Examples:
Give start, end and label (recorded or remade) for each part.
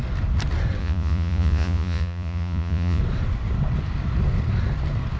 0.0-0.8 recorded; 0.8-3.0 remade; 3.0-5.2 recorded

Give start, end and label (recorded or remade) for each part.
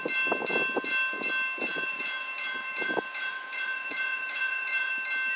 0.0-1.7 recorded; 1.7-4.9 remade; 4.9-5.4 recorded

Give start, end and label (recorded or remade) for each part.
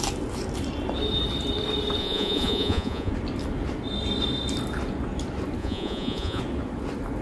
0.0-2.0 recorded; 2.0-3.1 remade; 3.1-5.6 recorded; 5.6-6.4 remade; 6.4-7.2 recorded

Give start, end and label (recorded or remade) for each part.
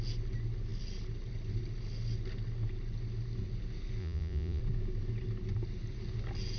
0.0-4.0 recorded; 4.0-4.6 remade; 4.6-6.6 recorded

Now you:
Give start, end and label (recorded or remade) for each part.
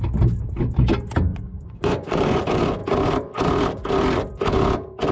0.0-1.3 recorded; 1.3-2.4 remade; 2.4-5.1 recorded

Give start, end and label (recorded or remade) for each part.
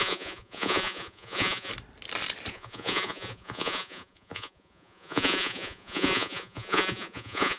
0.0-1.7 remade; 1.7-2.5 recorded; 2.5-7.6 remade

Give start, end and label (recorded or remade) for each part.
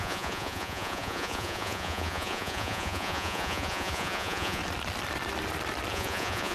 0.0-4.6 remade; 4.6-5.9 recorded; 5.9-6.5 remade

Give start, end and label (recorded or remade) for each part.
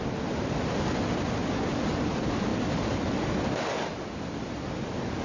0.0-5.2 recorded